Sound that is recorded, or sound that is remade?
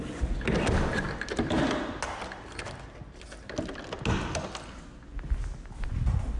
recorded